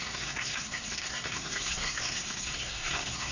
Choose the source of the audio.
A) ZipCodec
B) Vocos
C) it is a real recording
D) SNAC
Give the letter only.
D